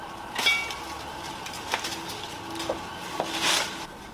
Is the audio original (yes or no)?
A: yes